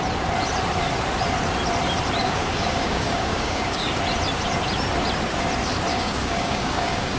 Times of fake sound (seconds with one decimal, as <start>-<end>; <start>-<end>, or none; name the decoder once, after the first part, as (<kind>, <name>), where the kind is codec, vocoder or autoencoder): 2.2-4.0 (codec, DAC); 5.9-7.2